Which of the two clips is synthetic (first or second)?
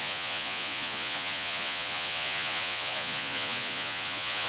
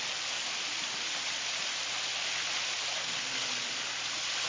first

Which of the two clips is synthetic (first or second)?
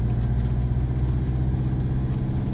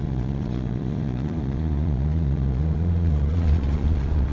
second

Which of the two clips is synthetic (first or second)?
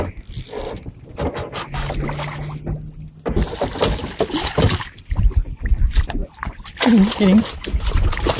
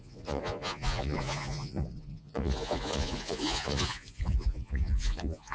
second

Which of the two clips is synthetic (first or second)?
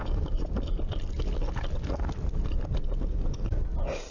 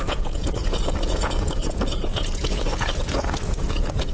second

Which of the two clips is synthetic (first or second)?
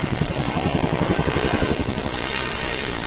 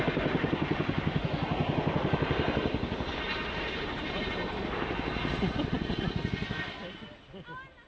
first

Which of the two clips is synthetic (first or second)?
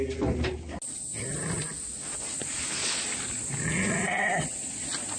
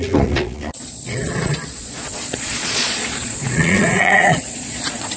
second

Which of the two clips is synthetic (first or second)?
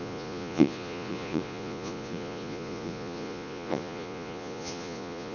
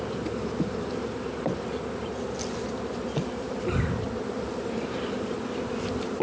first